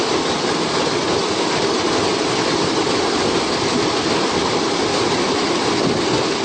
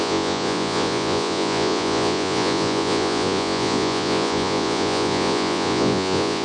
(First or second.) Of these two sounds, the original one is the first